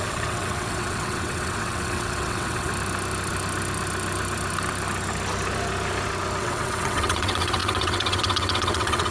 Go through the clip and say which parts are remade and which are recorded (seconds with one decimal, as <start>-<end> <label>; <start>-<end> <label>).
0.0-2.7 remade; 2.7-6.4 recorded; 6.4-9.1 remade